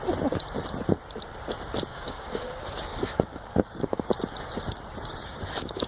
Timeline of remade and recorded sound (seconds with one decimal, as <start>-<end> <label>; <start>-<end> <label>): 0.0-1.9 recorded; 1.9-2.5 remade; 2.5-2.9 recorded; 2.9-4.1 remade; 4.1-5.9 recorded